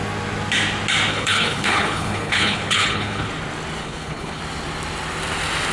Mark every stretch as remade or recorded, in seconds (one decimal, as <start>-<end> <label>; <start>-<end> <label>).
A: 0.0-1.1 recorded; 1.1-3.3 remade; 3.3-3.8 recorded; 3.8-4.4 remade; 4.4-5.7 recorded